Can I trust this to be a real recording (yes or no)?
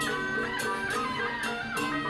yes